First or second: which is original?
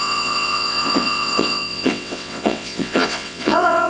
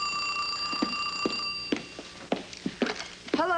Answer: second